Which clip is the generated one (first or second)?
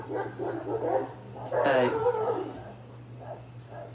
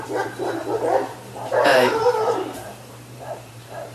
second